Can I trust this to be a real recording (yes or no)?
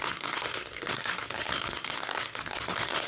no